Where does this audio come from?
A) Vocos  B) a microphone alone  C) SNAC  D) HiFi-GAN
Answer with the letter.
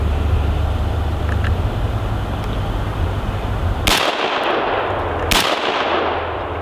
B